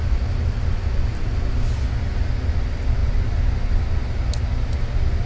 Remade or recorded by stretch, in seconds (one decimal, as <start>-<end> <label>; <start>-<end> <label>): 0.0-5.3 recorded